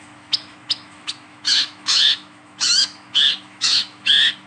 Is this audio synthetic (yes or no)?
yes